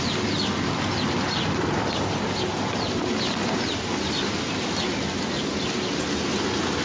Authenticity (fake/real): real